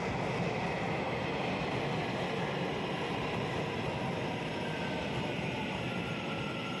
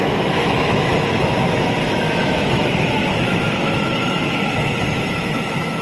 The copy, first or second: second